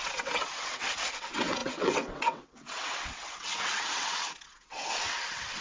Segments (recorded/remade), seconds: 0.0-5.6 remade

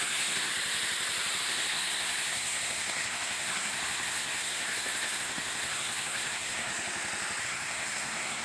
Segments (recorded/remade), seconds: 0.0-0.5 remade; 0.5-1.4 recorded; 1.4-6.7 remade; 6.7-7.4 recorded; 7.4-8.4 remade

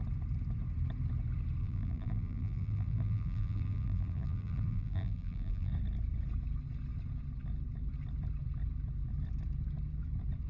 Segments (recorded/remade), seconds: 0.0-1.6 recorded; 1.6-5.7 remade; 5.7-10.5 recorded